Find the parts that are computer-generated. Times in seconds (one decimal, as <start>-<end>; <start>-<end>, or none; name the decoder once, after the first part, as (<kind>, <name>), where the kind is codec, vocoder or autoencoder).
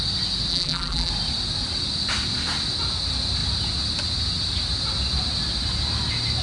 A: 0.5-1.1 (vocoder, BigVGAN v2)